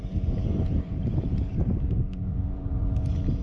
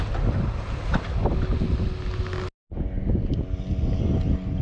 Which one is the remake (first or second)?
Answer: first